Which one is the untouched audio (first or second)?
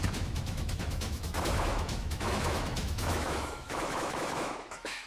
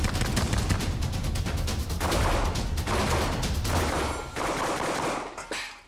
second